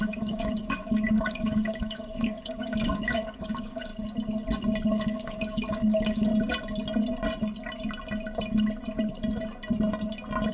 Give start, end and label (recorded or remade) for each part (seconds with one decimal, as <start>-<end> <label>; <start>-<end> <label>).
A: 0.0-3.9 remade; 3.9-4.9 recorded; 4.9-6.3 remade; 6.3-10.5 recorded